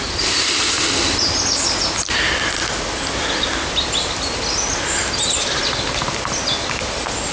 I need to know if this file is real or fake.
real